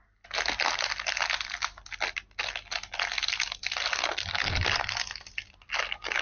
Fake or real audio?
real